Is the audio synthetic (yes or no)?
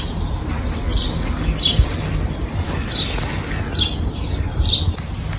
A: no